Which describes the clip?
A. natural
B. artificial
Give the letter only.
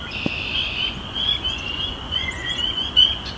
B